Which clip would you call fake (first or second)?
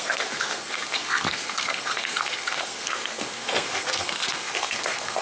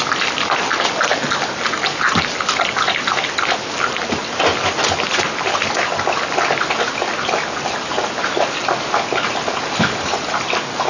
first